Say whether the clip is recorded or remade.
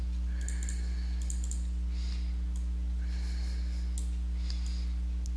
recorded